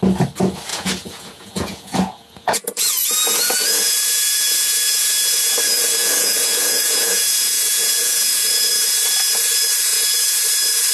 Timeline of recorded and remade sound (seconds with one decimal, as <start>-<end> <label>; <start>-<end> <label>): 0.0-0.7 recorded; 0.7-5.5 remade; 5.5-6.0 recorded; 6.0-8.7 remade; 8.7-9.9 recorded; 9.9-10.4 remade; 10.4-10.9 recorded